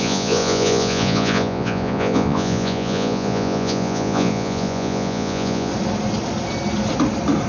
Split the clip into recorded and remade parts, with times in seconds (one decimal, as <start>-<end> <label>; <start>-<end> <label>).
0.0-5.7 remade; 5.7-7.5 recorded